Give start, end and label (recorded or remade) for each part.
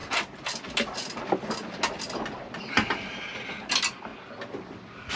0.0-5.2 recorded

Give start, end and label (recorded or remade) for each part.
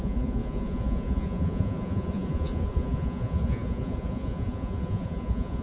0.0-5.6 remade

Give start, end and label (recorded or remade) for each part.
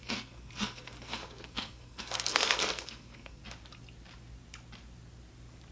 0.0-3.4 remade; 3.4-5.7 recorded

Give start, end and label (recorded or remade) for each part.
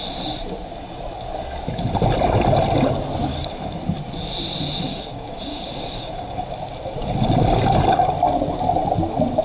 0.0-3.3 recorded; 3.3-3.8 remade; 3.8-4.9 recorded; 4.9-6.5 remade; 6.5-9.4 recorded